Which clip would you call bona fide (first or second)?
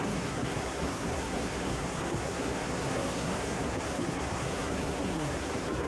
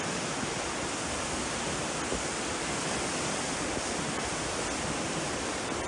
second